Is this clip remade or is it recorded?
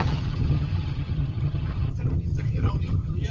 remade